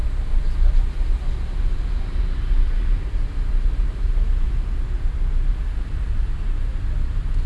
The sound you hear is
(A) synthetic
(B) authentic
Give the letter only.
B